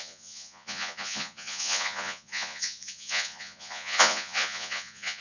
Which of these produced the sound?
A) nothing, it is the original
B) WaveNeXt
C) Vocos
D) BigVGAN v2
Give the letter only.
C